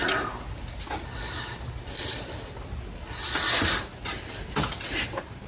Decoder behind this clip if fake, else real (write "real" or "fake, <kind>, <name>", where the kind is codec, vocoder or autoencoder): real